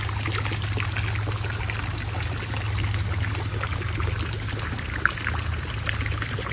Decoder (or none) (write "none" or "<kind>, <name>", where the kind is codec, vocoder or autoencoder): none